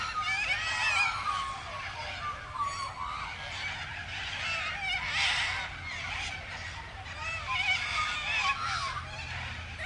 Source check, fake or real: real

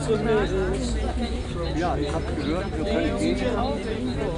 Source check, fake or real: real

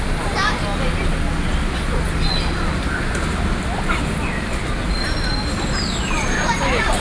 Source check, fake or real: real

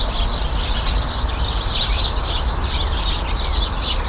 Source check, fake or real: real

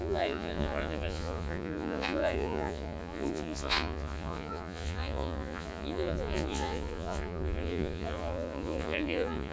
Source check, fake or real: fake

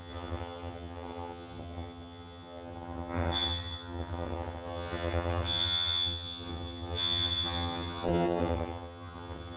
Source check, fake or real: fake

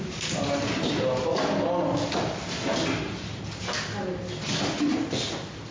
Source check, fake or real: real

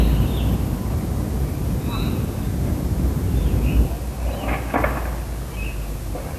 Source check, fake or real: real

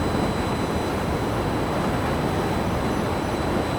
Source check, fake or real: real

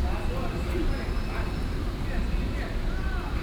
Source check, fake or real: real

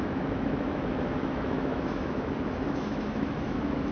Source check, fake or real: fake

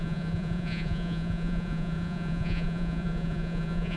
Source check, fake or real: fake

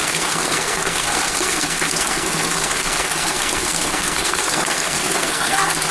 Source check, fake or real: fake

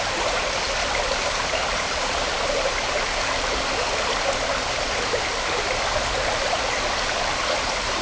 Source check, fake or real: fake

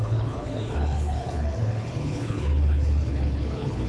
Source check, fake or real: fake